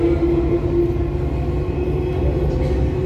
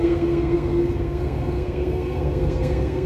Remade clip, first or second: second